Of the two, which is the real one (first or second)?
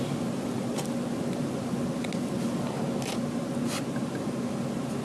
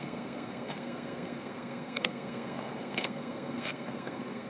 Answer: first